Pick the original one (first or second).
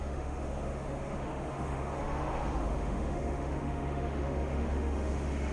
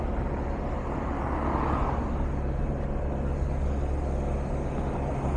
second